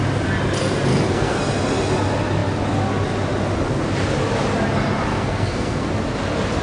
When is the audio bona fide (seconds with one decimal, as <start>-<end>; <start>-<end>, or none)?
0.0-0.9; 1.4-5.1; 5.9-6.6